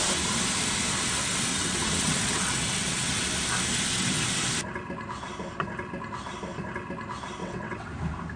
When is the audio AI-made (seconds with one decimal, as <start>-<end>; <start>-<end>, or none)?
1.5-3.2; 7.4-7.9